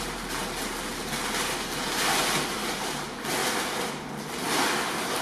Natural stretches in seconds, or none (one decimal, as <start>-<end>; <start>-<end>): 0.0-5.2